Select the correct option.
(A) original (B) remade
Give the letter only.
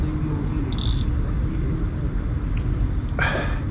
A